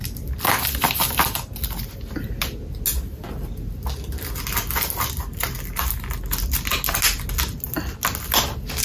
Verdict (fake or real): real